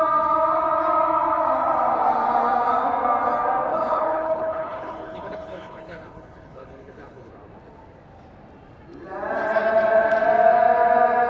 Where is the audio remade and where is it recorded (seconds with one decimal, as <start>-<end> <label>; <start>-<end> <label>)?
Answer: 0.0-3.7 recorded; 3.7-7.3 remade; 7.3-11.3 recorded